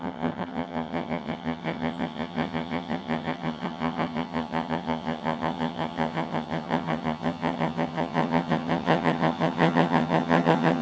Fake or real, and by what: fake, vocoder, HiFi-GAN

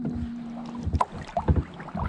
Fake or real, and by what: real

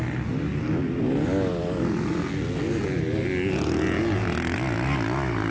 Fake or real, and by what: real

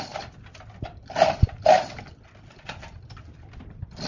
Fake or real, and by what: real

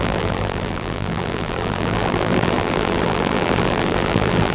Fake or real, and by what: fake, vocoder, BigVGAN v2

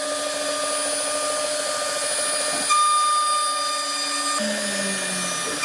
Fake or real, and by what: real